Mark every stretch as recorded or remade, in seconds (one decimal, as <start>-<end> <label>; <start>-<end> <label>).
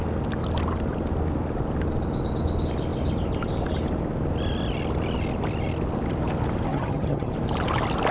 0.0-6.7 recorded; 6.7-7.3 remade; 7.3-8.1 recorded